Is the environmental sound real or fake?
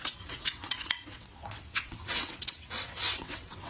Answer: fake